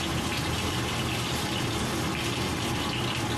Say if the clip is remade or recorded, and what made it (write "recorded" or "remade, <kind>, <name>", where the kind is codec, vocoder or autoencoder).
recorded